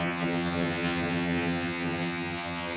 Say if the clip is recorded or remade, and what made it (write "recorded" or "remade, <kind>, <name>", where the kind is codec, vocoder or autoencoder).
remade, vocoder, HiFi-GAN